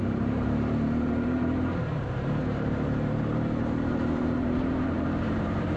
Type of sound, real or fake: fake